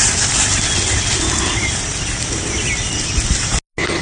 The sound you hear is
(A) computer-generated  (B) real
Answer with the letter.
B